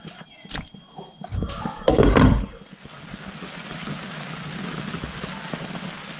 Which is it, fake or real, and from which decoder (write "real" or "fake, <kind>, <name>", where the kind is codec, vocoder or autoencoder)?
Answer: real